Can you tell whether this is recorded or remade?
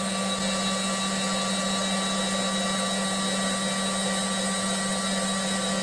recorded